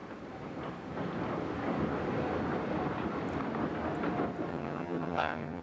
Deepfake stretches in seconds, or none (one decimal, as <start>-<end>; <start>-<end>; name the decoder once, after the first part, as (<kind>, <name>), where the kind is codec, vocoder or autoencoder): 4.5-5.6 (vocoder, HiFi-GAN)